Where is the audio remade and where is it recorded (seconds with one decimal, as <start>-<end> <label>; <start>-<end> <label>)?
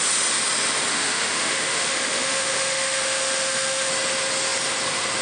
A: 0.0-0.9 recorded; 0.9-3.9 remade; 3.9-5.2 recorded